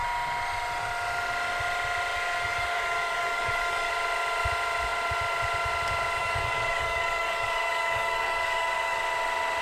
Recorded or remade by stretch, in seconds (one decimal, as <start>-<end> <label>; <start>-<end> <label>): 0.0-2.1 recorded; 2.1-3.9 remade; 3.9-6.2 recorded; 6.2-9.0 remade; 9.0-9.6 recorded